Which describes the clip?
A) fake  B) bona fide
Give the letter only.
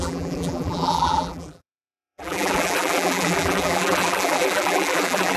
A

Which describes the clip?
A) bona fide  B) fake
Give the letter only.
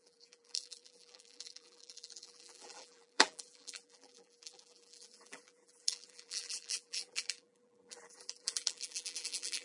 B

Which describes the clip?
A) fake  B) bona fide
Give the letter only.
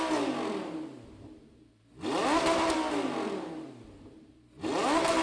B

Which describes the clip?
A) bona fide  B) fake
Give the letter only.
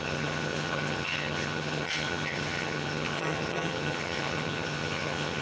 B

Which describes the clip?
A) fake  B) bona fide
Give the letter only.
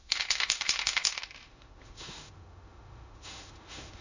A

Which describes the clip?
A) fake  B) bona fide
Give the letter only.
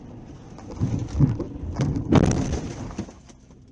B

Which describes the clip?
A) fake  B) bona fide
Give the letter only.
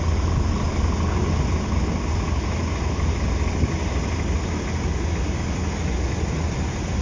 B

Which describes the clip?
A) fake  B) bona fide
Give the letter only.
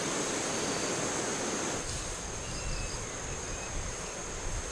B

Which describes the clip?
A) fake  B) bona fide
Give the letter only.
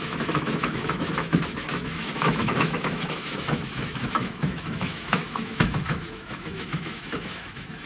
A